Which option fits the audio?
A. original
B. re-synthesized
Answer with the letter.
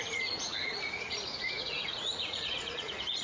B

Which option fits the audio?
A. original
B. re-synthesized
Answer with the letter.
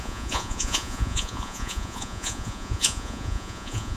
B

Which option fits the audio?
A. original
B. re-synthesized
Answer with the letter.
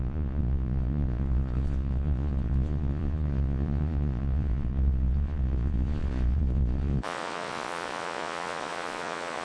B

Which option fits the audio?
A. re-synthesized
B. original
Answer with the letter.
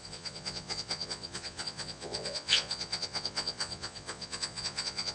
A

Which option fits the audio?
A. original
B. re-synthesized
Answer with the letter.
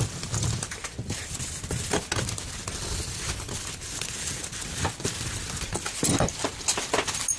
A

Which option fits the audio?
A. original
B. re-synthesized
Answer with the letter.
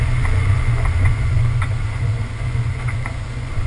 B